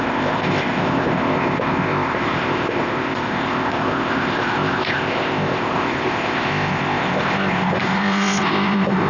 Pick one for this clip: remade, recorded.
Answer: remade